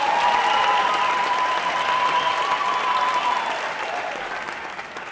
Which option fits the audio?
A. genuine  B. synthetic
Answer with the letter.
A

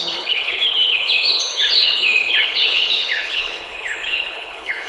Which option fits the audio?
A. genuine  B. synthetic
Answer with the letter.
B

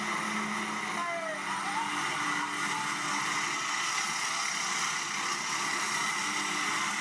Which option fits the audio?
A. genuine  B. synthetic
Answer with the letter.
A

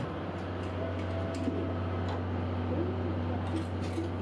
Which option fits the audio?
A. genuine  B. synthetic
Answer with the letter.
A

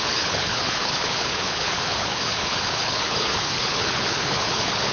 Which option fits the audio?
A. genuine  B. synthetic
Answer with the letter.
B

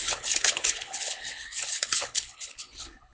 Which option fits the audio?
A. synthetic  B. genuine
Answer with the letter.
A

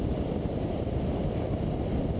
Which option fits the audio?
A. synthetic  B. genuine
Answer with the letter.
B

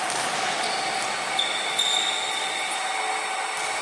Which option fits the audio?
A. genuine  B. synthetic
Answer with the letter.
A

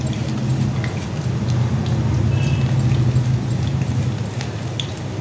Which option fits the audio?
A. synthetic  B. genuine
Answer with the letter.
B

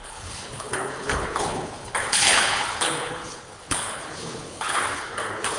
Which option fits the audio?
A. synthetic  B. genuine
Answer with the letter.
A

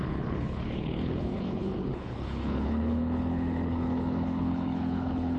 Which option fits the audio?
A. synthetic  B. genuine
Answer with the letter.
A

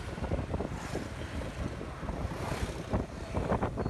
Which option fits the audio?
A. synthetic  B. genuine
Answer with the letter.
B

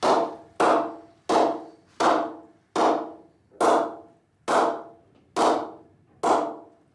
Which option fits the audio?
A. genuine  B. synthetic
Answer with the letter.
A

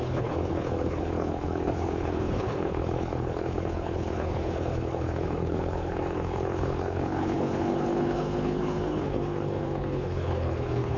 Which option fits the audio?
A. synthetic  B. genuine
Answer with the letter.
A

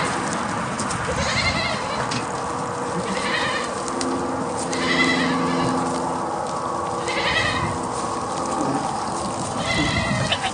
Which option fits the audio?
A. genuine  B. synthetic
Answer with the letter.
A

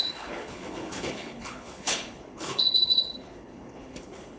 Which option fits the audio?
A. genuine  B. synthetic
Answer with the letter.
B